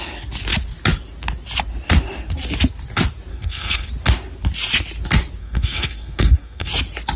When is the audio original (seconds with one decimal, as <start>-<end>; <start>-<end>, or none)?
0.0-3.3; 3.9-5.4; 6.7-7.2